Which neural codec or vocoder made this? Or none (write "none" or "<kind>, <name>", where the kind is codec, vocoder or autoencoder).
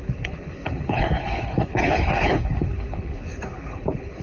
codec, HILCodec